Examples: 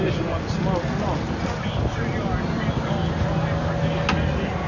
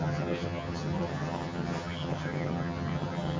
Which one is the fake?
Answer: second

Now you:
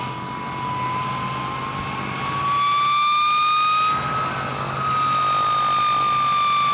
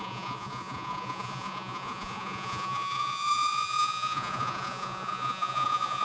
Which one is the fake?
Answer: second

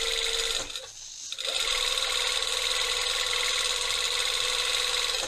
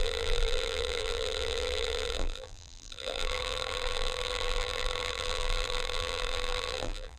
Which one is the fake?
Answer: second